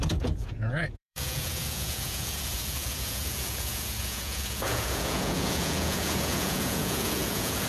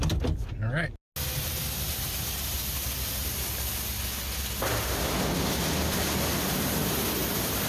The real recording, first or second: second